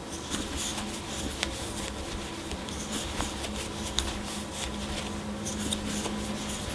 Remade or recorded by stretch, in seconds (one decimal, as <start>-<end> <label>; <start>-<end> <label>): 0.0-6.7 recorded